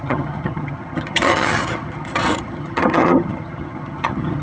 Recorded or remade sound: remade